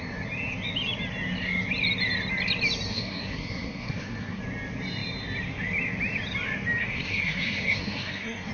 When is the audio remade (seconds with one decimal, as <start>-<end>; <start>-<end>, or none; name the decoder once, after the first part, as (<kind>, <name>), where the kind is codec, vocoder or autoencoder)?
2.9-4.4 (codec, SNAC); 6.8-8.5